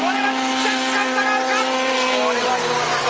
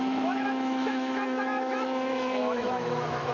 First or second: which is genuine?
first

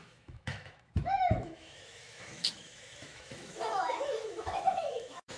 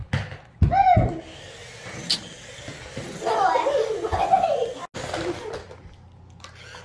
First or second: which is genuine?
second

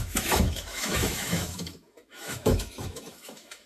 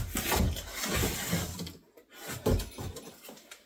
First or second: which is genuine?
second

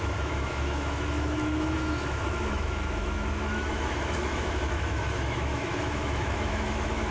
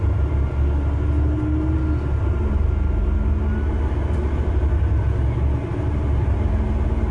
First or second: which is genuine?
second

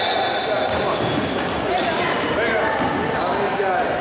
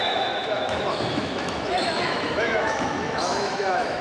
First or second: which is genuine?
first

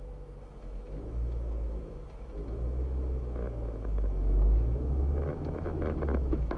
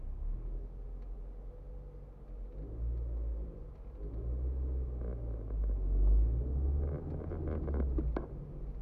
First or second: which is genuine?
second